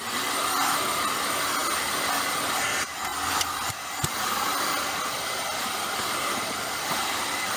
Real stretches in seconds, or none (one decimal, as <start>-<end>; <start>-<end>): 0.0-7.6